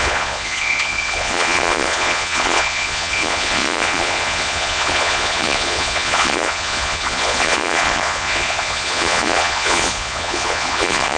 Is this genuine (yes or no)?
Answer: no